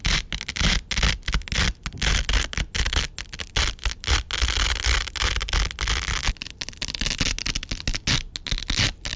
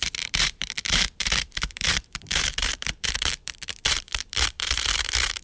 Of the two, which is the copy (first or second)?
second